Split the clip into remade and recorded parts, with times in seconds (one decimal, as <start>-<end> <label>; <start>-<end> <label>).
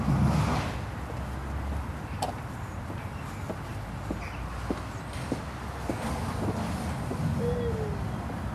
0.0-8.5 recorded